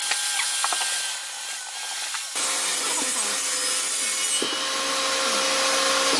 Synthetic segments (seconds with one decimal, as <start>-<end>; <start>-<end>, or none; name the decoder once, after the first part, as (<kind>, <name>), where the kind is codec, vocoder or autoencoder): none